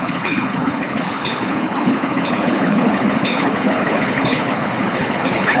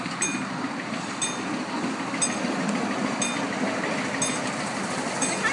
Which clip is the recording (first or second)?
second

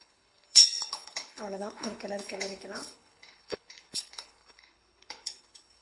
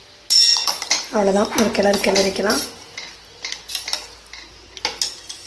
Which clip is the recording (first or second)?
second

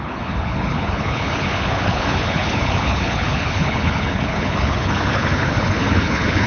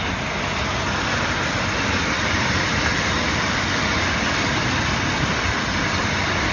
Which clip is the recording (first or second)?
second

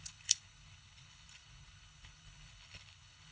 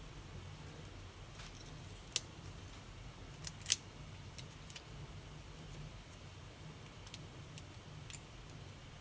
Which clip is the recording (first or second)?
second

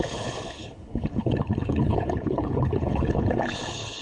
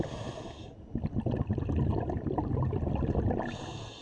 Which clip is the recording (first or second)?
second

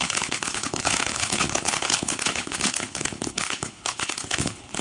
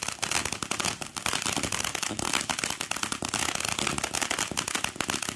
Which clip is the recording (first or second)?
second